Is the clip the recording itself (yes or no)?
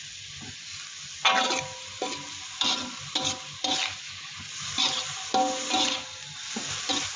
yes